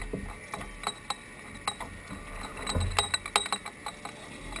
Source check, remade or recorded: recorded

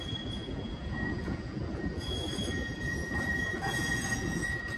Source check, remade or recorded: remade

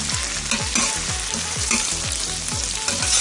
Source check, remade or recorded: recorded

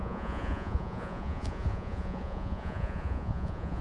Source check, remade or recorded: remade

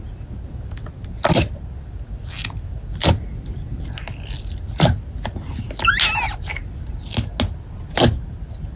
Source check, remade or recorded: recorded